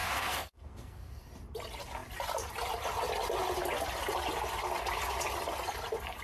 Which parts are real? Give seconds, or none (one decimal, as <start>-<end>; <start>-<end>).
1.3-6.2

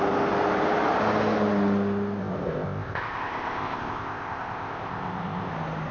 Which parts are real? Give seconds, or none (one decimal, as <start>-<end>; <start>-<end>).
0.0-2.2; 5.5-5.9

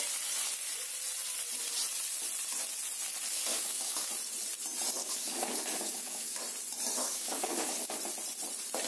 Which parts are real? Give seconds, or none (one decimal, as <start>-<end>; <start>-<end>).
0.0-3.5; 4.1-5.0; 6.4-7.0; 8.0-8.9

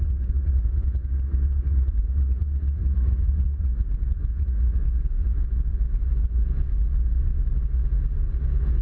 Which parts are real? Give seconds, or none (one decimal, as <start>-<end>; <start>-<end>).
3.7-4.3; 4.8-8.8

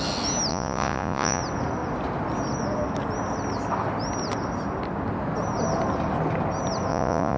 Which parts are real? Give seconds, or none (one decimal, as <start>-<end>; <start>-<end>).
0.0-0.5; 1.4-6.9

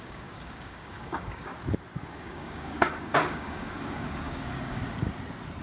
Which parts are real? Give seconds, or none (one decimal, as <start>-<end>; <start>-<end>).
1.5-2.2; 4.8-5.6

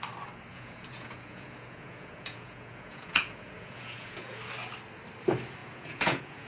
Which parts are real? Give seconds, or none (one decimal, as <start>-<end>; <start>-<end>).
0.0-0.5; 4.4-5.6

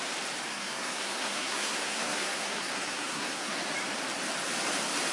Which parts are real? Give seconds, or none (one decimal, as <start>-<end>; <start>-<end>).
0.0-0.5; 3.6-5.1